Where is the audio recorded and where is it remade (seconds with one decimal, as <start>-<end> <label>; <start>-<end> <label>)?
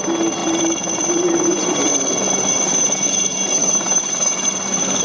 0.0-5.0 recorded